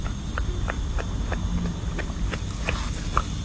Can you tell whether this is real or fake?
real